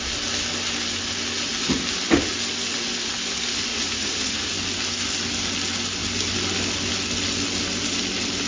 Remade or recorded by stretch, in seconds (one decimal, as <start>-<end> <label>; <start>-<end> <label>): 0.0-3.7 recorded; 3.7-4.5 remade; 4.5-8.5 recorded